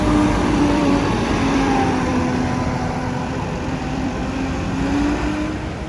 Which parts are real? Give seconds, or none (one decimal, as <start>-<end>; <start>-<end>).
2.1-2.6; 4.2-5.9